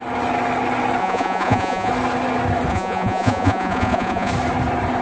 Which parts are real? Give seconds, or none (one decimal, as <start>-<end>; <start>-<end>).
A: 0.0-1.0; 1.9-2.7; 4.3-5.0